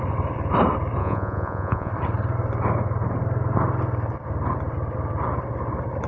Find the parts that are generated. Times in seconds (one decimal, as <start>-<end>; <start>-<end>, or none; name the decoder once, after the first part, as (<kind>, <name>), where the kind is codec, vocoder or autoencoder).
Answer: 1.0-1.9 (vocoder, Vocos)